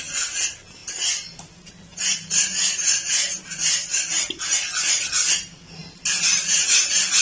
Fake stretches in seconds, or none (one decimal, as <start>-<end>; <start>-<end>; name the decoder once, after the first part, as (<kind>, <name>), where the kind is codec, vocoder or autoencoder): none